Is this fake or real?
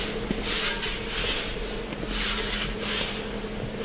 real